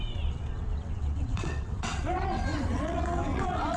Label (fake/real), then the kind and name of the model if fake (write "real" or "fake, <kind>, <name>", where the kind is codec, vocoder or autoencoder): fake, vocoder, WaveNeXt